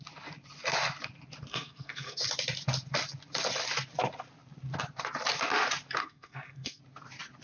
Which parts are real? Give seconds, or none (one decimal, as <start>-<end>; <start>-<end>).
0.0-1.5; 2.2-6.0; 6.8-7.4